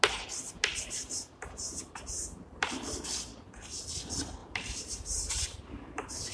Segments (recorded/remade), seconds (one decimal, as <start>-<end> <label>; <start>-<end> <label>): 0.0-0.7 recorded; 0.7-2.7 remade; 2.7-4.4 recorded; 4.4-6.3 remade